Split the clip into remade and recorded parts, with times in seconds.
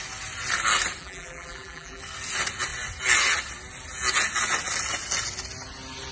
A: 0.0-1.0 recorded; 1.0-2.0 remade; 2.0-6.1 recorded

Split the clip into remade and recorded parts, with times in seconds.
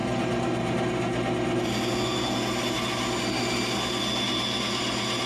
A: 0.0-5.3 recorded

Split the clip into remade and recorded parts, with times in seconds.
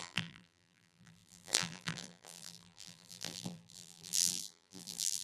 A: 0.0-5.2 remade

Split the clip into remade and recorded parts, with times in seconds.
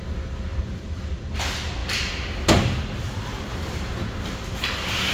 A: 0.0-0.5 recorded; 0.5-1.4 remade; 1.4-5.1 recorded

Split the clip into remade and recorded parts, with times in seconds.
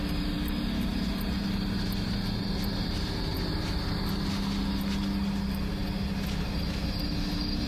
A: 0.0-7.7 recorded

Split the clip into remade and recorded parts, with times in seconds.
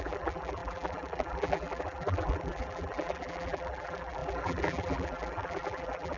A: 0.0-6.2 remade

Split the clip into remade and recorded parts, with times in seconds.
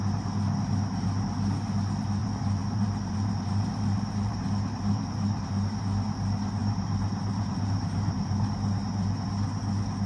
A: 0.0-2.2 recorded; 2.2-5.8 remade; 5.8-6.6 recorded; 6.6-8.5 remade; 8.5-10.1 recorded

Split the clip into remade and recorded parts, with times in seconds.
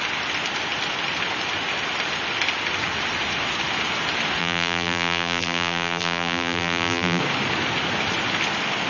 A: 0.0-4.4 recorded; 4.4-7.2 remade; 7.2-8.9 recorded